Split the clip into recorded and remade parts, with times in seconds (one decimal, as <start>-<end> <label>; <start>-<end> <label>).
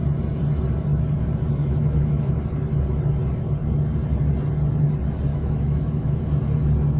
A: 0.0-1.6 recorded; 1.6-2.3 remade; 2.3-5.3 recorded; 5.3-6.2 remade; 6.2-7.0 recorded